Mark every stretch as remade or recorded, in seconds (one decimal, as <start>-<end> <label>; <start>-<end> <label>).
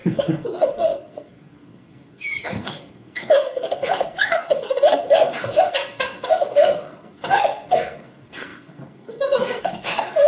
0.0-10.3 remade